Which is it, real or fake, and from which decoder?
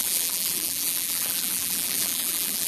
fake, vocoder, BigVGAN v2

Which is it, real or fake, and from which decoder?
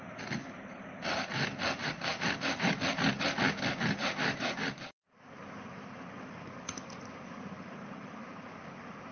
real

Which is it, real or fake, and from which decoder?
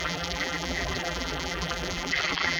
fake, vocoder, BigVGAN v2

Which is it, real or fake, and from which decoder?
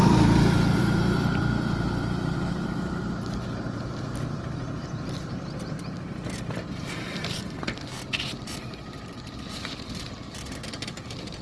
fake, vocoder, BigVGAN v2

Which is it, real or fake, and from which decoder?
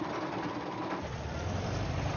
fake, vocoder, BigVGAN v2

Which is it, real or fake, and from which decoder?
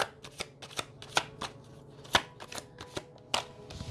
real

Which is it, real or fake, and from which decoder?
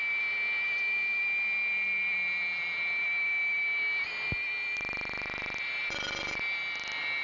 real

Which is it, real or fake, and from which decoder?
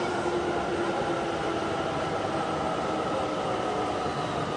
real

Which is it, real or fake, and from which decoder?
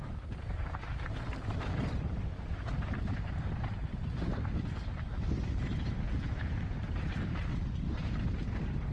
fake, vocoder, BigVGAN v2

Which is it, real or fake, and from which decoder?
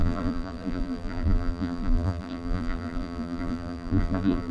fake, vocoder, BigVGAN v2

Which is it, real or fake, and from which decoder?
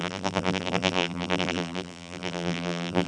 fake, vocoder, BigVGAN v2